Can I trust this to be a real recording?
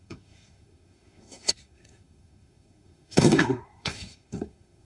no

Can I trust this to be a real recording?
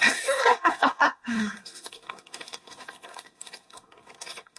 no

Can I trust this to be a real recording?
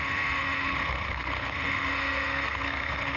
no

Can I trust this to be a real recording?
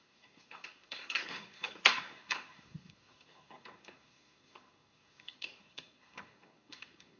no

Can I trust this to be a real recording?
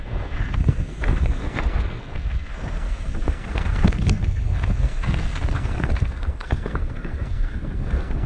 no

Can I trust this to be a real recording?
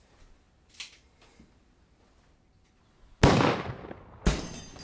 yes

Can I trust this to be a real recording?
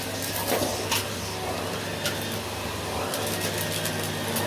yes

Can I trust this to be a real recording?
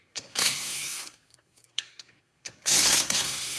no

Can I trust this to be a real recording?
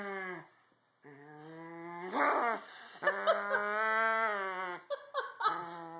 yes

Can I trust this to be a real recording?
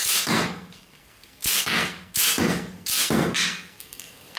no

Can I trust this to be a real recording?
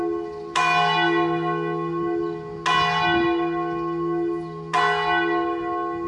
yes